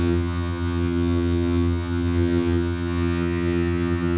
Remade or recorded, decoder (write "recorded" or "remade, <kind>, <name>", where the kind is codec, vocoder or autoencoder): remade, vocoder, HiFi-GAN